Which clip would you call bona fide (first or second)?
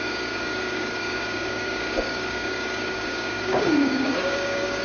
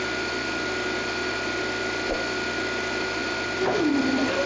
second